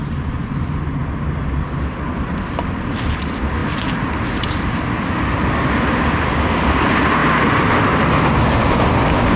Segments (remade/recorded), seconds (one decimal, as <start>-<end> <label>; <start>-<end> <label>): 0.0-1.0 remade; 1.0-2.9 recorded; 2.9-3.6 remade; 3.6-6.7 recorded; 6.7-7.2 remade; 7.2-8.4 recorded; 8.4-9.4 remade